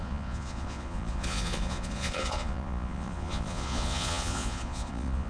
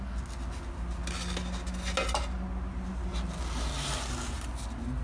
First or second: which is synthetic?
first